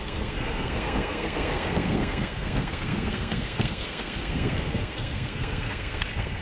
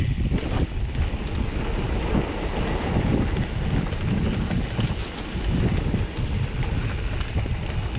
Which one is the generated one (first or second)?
first